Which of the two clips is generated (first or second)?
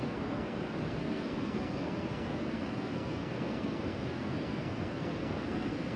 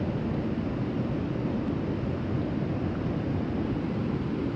first